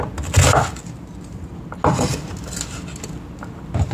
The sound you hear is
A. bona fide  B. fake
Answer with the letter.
A